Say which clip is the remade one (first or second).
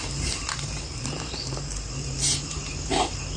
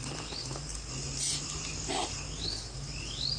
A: first